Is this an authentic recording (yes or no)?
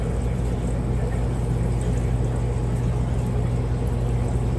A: yes